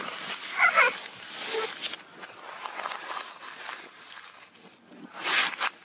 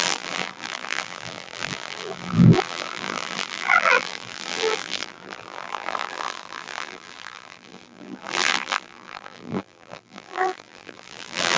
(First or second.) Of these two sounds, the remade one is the second